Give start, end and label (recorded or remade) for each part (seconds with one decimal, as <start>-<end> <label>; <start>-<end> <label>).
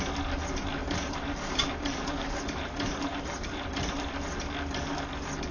0.0-0.8 recorded; 0.8-4.1 remade; 4.1-5.5 recorded